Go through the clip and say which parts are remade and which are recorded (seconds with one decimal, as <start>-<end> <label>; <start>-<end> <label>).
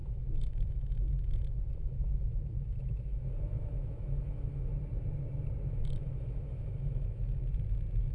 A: 0.0-4.7 remade; 4.7-5.7 recorded; 5.7-7.4 remade; 7.4-8.1 recorded